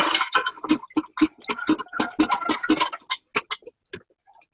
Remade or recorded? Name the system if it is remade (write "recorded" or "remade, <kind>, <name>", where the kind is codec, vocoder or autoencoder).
recorded